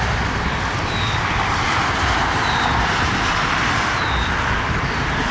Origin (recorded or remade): recorded